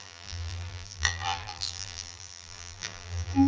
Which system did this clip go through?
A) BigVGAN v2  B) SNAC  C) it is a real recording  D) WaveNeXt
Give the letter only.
A